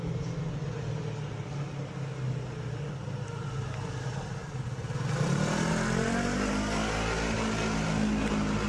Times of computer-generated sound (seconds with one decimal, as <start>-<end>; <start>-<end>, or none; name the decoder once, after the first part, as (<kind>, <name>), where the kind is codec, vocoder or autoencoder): none